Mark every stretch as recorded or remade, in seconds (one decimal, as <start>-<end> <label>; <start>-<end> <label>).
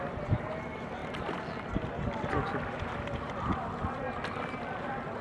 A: 0.0-5.2 recorded